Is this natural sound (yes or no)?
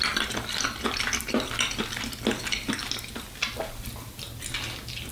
yes